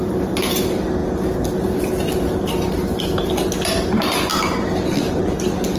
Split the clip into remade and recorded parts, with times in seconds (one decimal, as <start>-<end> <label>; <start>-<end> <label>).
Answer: 0.0-5.8 recorded